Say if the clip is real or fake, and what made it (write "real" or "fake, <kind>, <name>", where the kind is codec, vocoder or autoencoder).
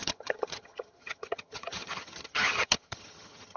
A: fake, vocoder, HiFi-GAN